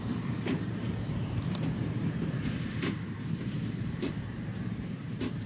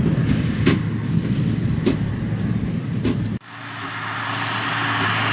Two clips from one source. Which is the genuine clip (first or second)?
second